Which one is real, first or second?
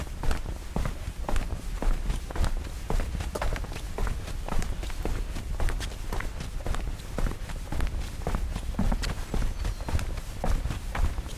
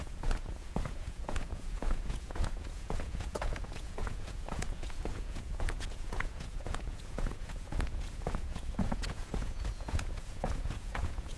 first